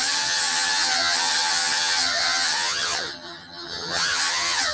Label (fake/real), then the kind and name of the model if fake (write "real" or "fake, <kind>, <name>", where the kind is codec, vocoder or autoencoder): fake, vocoder, HiFi-GAN